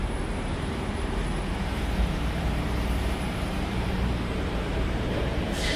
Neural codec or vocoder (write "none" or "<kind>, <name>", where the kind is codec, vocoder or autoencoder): vocoder, BigVGAN v2